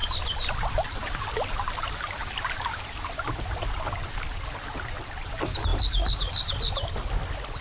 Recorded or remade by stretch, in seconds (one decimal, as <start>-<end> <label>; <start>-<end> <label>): 0.0-7.6 recorded